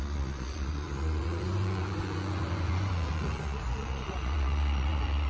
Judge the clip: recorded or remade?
remade